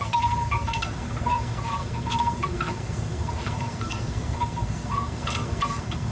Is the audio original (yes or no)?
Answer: no